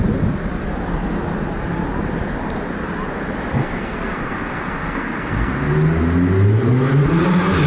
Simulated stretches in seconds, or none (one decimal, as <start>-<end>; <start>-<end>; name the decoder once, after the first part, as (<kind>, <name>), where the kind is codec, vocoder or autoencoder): 3.6-5.5 (codec, SNAC)